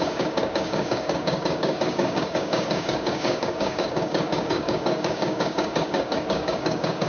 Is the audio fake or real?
fake